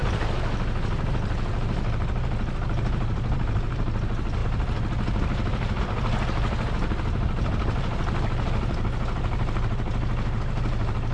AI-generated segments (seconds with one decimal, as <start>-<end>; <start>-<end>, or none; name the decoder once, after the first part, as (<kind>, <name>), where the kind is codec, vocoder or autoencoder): none